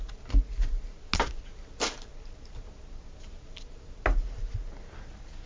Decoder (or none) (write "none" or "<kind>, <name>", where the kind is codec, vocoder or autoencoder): none